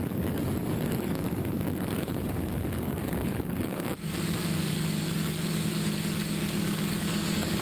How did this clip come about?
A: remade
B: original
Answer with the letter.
A